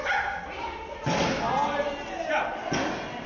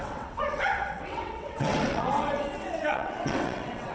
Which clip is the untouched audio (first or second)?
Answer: first